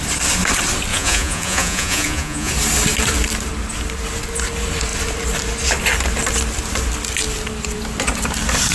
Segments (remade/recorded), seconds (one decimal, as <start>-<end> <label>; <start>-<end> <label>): 0.0-0.9 recorded; 0.9-2.5 remade; 2.5-8.7 recorded